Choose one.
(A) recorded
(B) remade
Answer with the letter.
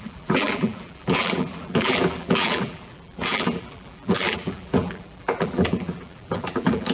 B